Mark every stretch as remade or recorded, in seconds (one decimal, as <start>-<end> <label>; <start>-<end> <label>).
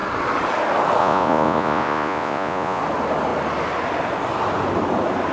0.0-1.0 recorded; 1.0-2.8 remade; 2.8-5.3 recorded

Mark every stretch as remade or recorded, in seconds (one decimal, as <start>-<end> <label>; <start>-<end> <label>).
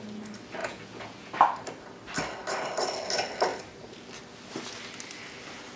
0.0-0.6 recorded; 0.6-1.3 remade; 1.3-5.8 recorded